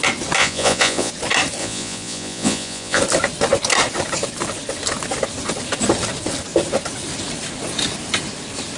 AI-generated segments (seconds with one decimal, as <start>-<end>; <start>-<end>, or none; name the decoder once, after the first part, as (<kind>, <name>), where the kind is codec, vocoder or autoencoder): 0.4-1.1 (vocoder, Vocos); 1.6-3.0